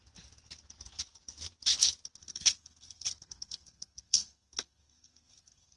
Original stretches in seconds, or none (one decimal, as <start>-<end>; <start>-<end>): 0.0-2.2